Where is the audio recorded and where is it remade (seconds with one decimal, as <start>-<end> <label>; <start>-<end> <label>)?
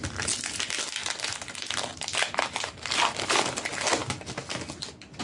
0.0-5.2 recorded